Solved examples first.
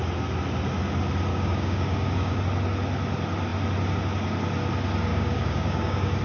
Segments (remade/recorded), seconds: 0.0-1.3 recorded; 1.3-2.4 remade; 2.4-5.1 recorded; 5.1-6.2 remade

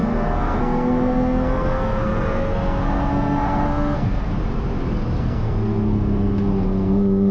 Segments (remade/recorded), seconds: 0.0-4.3 remade; 4.3-5.2 recorded; 5.2-7.3 remade

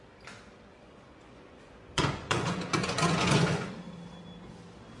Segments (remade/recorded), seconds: 0.0-0.7 recorded; 0.7-3.7 remade; 3.7-5.0 recorded

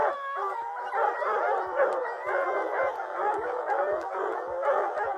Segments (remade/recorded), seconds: 0.0-2.0 recorded; 2.0-5.2 remade

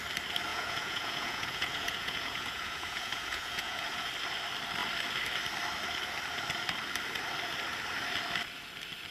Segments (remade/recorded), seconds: 0.0-0.5 recorded; 0.5-4.1 remade; 4.1-9.1 recorded

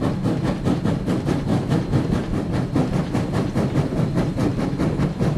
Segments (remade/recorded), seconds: 0.0-5.4 recorded

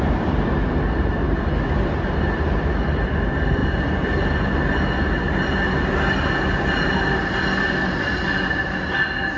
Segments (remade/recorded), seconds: 0.0-9.4 recorded